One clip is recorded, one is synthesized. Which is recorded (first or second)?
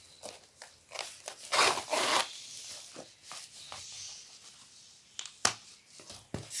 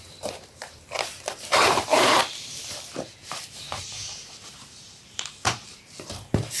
first